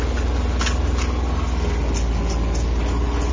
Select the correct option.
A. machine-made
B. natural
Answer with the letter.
B